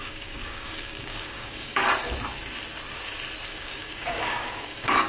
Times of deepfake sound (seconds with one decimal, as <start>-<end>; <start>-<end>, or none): 0.0-1.8; 3.5-5.1